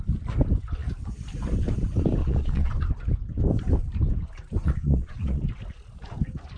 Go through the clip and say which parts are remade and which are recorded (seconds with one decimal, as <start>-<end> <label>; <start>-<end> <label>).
0.0-2.2 recorded; 2.2-2.9 remade; 2.9-4.6 recorded; 4.6-5.4 remade; 5.4-6.6 recorded